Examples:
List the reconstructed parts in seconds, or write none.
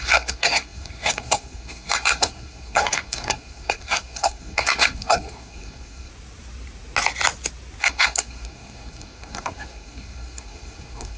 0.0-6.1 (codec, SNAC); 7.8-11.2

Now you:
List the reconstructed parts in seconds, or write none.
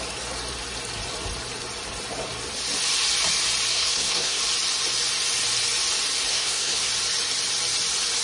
3.7-4.4 (codec, SNAC); 6.3-6.9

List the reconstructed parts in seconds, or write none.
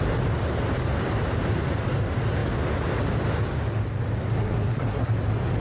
4.4-5.1 (codec, SNAC)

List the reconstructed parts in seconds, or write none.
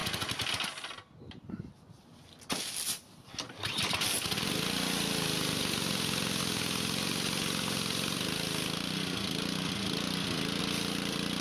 none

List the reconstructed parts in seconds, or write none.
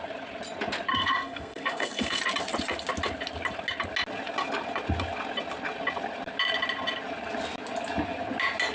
0.9-2.2 (codec, SNAC)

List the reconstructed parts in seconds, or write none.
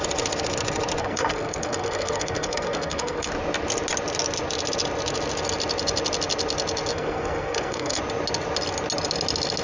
1.0-3.3 (codec, SNAC); 6.9-8.0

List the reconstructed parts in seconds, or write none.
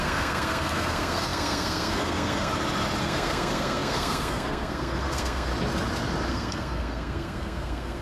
0.0-2.5 (codec, SNAC); 3.0-5.5; 6.3-8.0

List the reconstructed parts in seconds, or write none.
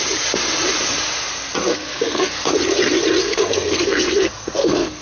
1.6-2.5 (codec, SNAC); 3.2-5.0